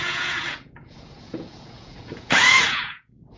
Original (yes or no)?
no